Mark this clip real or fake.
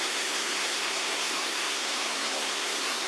fake